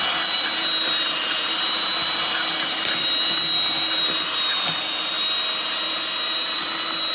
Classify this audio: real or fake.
real